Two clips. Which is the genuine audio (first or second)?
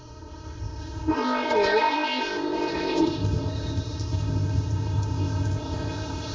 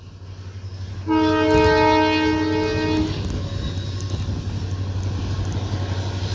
second